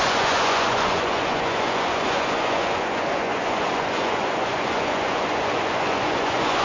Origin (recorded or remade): remade